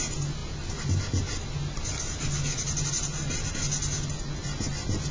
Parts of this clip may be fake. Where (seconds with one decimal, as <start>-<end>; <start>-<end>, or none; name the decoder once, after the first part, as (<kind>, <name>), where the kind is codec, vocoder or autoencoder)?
none